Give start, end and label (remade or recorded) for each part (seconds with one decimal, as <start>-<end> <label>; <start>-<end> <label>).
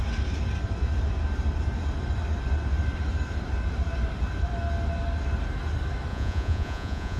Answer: 0.0-6.1 recorded; 6.1-7.2 remade